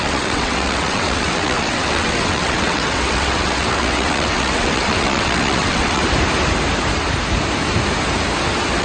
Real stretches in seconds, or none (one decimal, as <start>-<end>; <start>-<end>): 6.0-8.8